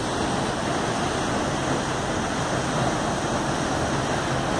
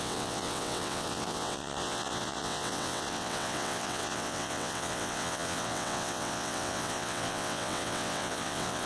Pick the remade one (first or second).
second